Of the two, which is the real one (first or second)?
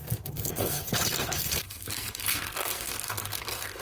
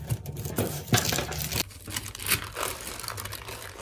second